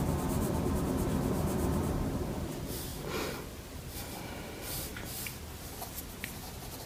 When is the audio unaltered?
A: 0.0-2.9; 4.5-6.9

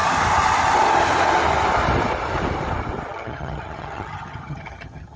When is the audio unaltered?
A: 0.0-3.1

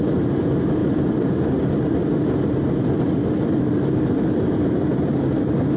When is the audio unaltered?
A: 0.0-0.8; 4.3-5.8

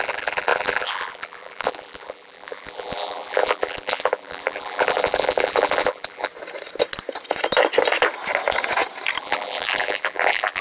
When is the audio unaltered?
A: 6.3-9.2

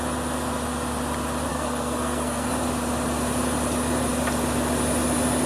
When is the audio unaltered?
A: 0.0-1.5; 2.5-5.5